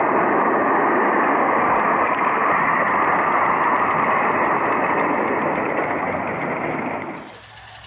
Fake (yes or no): no